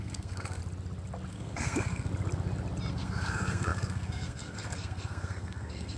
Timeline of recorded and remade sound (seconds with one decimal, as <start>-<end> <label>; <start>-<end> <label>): 0.0-0.6 remade; 0.6-1.3 recorded; 1.3-2.1 remade; 2.1-2.9 recorded; 2.9-6.0 remade